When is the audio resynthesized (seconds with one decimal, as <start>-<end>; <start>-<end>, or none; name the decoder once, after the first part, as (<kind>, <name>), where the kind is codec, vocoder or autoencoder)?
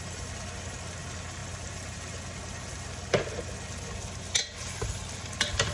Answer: none